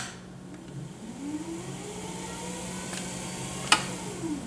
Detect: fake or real real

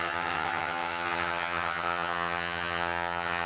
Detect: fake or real fake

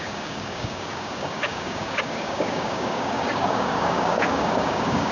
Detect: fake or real fake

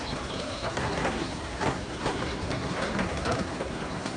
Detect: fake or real fake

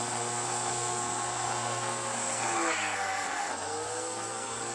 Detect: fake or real fake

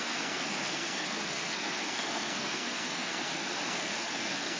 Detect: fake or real fake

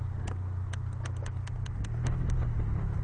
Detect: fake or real real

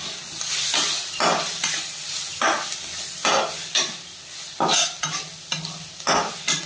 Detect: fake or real real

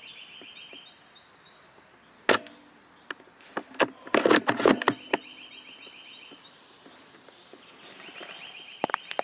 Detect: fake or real real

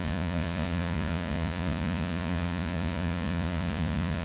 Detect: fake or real fake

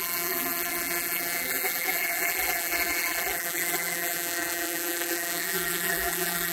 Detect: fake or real fake